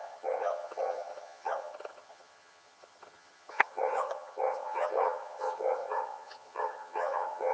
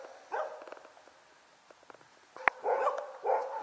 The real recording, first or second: second